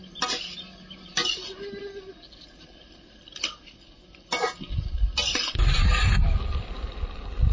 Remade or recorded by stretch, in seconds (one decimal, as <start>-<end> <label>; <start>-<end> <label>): 0.0-7.5 recorded